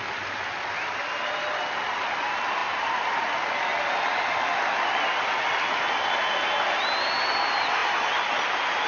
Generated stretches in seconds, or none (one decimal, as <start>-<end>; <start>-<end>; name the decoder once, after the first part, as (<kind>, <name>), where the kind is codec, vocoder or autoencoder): none